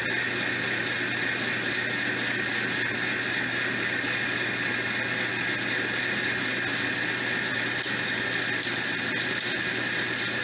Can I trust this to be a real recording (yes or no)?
yes